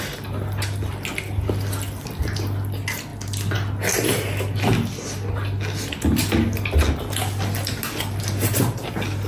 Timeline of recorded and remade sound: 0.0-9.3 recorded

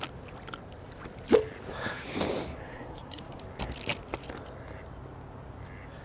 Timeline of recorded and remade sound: 0.0-2.6 recorded; 2.6-3.4 remade; 3.4-6.0 recorded

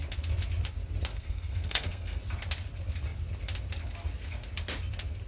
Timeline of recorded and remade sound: 0.0-1.1 recorded; 1.1-2.2 remade; 2.2-5.3 recorded

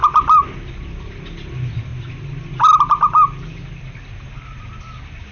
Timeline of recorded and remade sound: 0.0-5.3 recorded

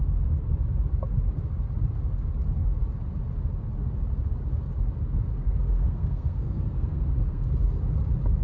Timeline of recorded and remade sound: 0.0-5.4 recorded; 5.4-7.5 remade; 7.5-8.4 recorded

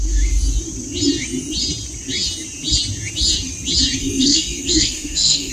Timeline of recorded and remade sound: 0.0-4.0 recorded; 4.0-5.5 remade